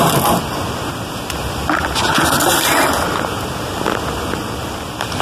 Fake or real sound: real